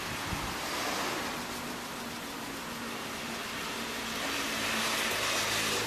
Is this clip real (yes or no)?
yes